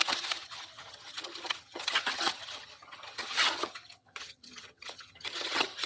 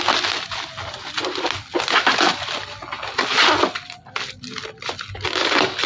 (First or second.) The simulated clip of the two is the first